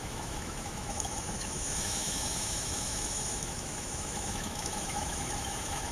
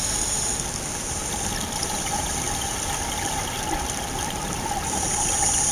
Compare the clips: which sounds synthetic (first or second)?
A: first